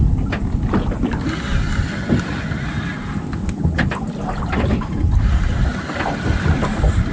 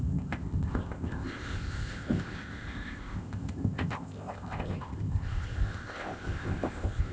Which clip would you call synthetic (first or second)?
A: second